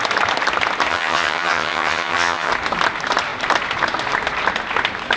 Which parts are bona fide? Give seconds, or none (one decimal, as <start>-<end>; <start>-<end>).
0.0-0.9; 2.5-5.2